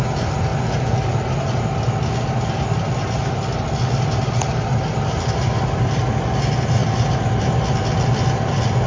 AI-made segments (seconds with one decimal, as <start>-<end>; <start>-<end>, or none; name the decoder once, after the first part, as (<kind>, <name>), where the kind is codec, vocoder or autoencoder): none